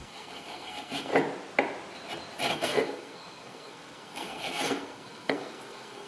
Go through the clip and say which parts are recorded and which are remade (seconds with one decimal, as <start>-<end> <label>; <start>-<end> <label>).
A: 0.0-1.1 remade; 1.1-2.5 recorded; 2.5-6.1 remade